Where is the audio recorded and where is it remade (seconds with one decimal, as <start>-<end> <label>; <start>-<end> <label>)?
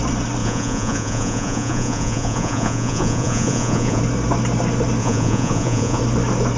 0.0-0.4 recorded; 0.4-4.0 remade; 4.0-5.0 recorded; 5.0-6.0 remade; 6.0-6.6 recorded